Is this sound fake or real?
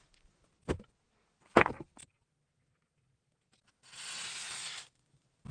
real